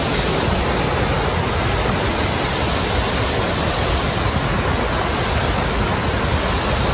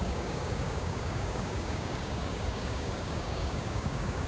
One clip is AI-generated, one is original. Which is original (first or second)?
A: first